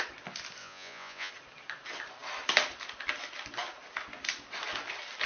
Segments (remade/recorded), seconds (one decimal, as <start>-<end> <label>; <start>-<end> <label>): 0.0-0.6 recorded; 0.6-1.3 remade; 1.3-5.3 recorded